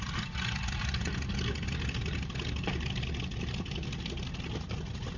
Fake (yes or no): no